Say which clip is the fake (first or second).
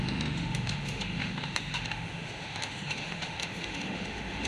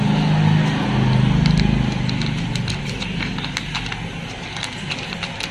first